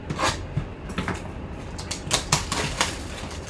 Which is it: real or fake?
real